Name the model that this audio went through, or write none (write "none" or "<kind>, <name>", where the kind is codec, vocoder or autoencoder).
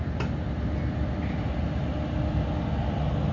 none